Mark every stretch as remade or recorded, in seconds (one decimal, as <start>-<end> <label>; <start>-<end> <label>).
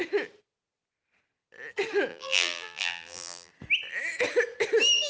0.0-2.1 recorded; 2.1-3.5 remade; 3.5-5.1 recorded